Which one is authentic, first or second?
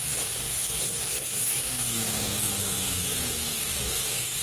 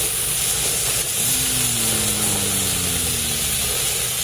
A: second